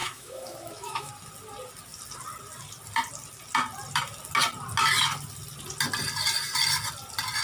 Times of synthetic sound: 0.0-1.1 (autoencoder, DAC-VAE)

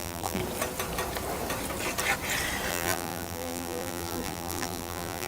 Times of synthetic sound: 0.0-0.4 (vocoder, BigVGAN v2); 2.7-5.3

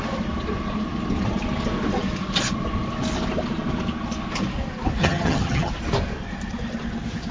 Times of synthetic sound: 5.0-5.7 (vocoder, HiFi-GAN)

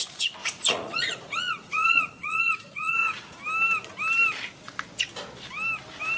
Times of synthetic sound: 0.4-3.4 (vocoder, Vocos)

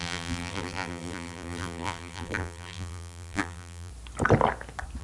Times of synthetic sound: 0.0-3.9 (vocoder, BigVGAN v2)

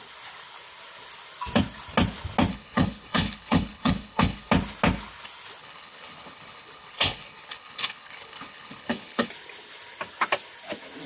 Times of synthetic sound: 2.5-4.5 (codec, HILCodec); 5.6-9.3

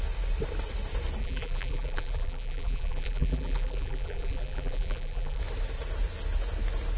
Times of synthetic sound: 1.2-5.4 (vocoder, BigVGAN v2)

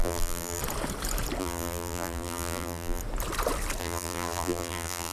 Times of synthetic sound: 0.0-0.6 (vocoder, BigVGAN v2); 1.4-3.0; 3.8-5.1